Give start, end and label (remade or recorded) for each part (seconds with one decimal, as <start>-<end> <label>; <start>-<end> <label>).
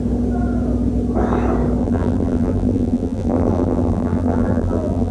0.0-1.8 recorded; 1.8-5.1 remade